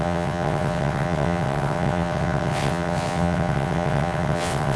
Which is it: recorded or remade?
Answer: remade